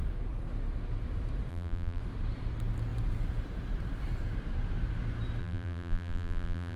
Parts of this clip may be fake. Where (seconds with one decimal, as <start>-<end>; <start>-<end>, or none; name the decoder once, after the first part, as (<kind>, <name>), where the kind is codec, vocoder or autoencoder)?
1.5-2.0 (vocoder, BigVGAN v2); 5.4-6.8

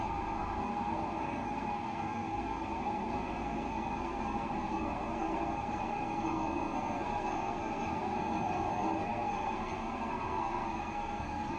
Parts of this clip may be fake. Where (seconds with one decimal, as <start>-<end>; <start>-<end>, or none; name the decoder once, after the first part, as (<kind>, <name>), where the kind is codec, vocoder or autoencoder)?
0.0-11.6 (codec, SNAC)